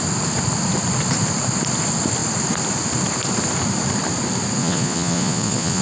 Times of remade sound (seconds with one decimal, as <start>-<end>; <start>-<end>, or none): 4.6-5.8